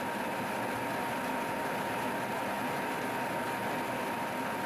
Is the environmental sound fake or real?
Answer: real